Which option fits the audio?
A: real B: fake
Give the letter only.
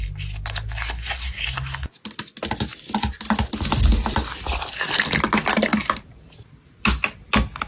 A